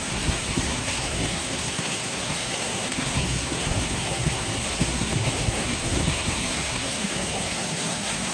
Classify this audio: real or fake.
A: fake